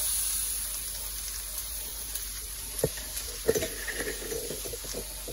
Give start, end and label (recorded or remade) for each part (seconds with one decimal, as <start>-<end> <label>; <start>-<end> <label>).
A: 0.0-1.6 recorded; 1.6-4.8 remade; 4.8-5.3 recorded